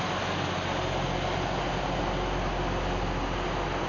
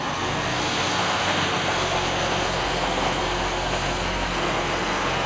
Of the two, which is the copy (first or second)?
second